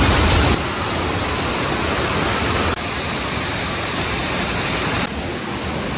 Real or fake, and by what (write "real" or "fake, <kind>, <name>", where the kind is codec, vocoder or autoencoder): real